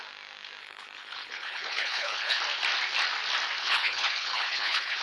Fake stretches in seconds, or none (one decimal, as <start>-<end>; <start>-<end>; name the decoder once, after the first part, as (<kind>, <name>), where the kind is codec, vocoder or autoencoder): 0.6-2.4 (codec, HILCodec); 3.6-5.0